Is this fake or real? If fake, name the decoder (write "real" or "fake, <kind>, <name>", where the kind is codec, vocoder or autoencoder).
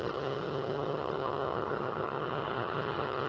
fake, vocoder, HiFi-GAN